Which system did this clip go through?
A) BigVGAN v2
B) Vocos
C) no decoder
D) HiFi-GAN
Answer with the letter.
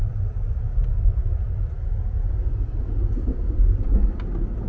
C